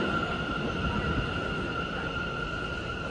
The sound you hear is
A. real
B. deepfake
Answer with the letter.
A